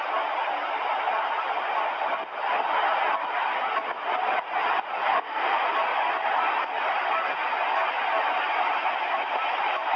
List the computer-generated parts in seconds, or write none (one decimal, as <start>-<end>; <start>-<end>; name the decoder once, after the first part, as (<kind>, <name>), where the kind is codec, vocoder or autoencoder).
5.1-5.6 (autoencoder, DAC-VAE)